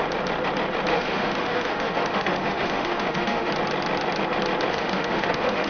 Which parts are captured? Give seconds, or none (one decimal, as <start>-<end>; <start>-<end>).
0.0-0.9; 3.5-4.7